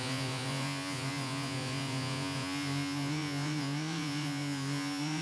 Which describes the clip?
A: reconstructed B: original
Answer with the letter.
A